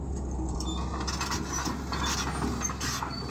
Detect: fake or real real